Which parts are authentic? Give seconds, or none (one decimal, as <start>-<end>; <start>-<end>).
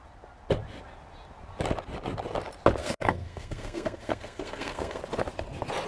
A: 0.0-2.8; 5.0-5.9